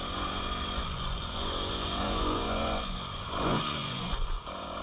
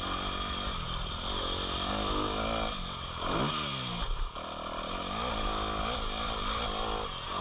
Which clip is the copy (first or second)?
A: first